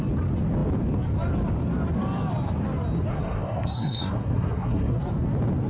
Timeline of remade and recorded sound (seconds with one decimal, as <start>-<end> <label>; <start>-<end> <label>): 0.0-3.1 recorded; 3.1-5.0 remade; 5.0-5.7 recorded